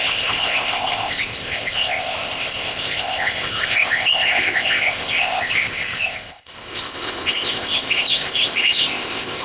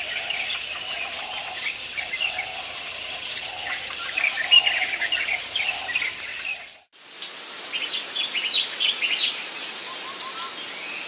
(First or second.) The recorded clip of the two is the second